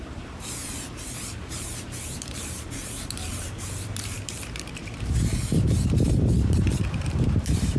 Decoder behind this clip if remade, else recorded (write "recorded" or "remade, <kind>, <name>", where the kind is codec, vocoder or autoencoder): remade, vocoder, BigVGAN v2